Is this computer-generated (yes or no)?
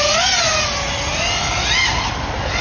no